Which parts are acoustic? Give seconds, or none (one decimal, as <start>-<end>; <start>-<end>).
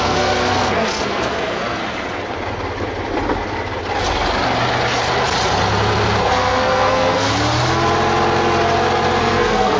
1.8-6.2; 7.3-9.2